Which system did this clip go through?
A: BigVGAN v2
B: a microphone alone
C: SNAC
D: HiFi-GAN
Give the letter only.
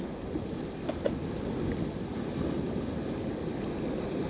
B